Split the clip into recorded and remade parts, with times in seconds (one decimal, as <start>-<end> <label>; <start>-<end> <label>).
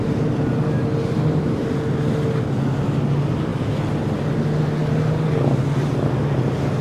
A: 0.0-6.8 recorded